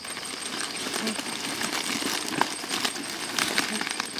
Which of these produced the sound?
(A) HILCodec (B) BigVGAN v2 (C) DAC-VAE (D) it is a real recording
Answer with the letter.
D